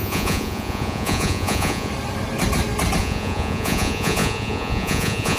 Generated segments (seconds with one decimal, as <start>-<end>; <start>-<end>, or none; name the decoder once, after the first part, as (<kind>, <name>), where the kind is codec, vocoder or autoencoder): 0.0-1.9 (vocoder, Vocos); 3.0-5.4